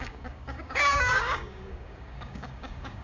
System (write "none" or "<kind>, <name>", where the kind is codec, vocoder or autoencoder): codec, DAC